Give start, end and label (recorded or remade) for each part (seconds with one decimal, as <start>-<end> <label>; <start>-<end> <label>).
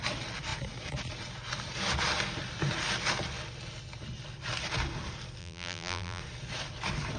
0.0-5.4 recorded; 5.4-6.2 remade; 6.2-7.2 recorded